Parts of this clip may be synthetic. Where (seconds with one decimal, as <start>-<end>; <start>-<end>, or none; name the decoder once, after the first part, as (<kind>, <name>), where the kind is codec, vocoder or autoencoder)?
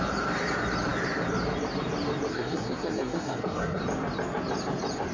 2.3-3.8 (codec, SNAC)